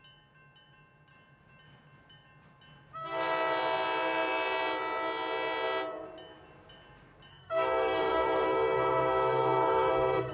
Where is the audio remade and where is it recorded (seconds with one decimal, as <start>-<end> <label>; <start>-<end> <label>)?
0.0-7.3 recorded; 7.3-10.3 remade